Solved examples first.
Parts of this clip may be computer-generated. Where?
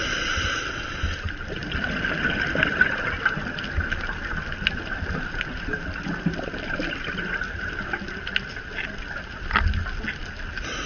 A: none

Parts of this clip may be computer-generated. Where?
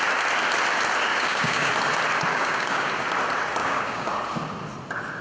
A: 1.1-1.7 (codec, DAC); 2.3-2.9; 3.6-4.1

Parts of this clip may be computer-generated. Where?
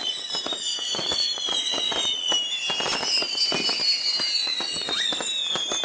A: 0.0-2.3 (vocoder, Vocos); 4.4-5.1